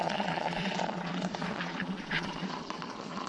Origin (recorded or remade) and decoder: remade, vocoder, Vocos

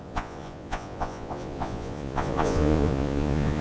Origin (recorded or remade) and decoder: remade, vocoder, Vocos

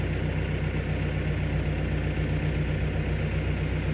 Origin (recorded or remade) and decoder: recorded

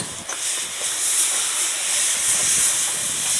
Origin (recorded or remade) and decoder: recorded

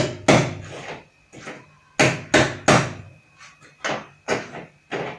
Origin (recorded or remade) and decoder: recorded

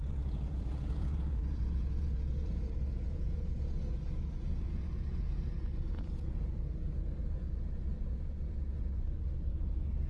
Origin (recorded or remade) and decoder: remade, vocoder, Vocos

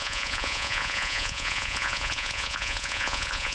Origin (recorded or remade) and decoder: remade, vocoder, Vocos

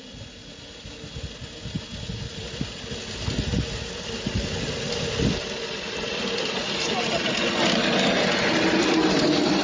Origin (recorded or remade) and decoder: recorded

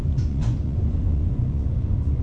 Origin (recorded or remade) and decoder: remade, vocoder, Vocos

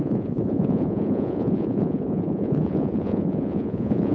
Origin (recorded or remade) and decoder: remade, vocoder, Vocos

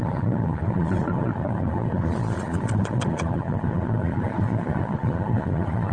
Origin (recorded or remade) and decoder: remade, vocoder, Vocos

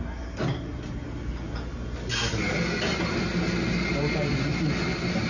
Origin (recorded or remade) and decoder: recorded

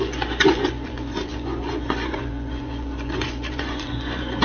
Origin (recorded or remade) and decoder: remade, vocoder, Vocos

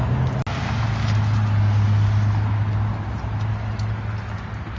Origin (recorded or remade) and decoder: recorded